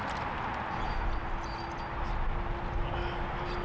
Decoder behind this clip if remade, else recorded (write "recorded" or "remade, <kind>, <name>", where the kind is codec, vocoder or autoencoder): recorded